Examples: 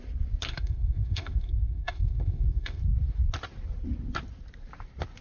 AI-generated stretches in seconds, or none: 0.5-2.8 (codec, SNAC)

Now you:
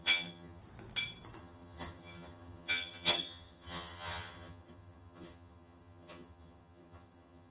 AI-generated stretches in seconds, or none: 0.0-0.6 (vocoder, HiFi-GAN); 1.4-7.5